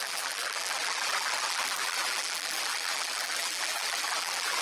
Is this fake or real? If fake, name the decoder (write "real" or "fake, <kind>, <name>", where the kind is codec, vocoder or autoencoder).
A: fake, vocoder, BigVGAN v2